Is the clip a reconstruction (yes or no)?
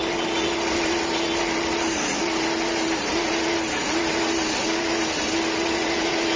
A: no